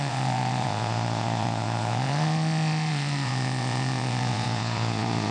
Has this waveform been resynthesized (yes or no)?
yes